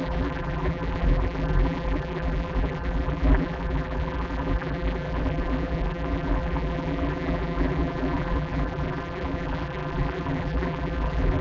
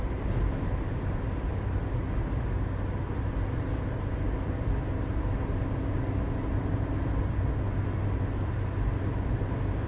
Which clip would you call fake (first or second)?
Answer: first